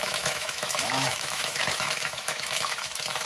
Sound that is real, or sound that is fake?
fake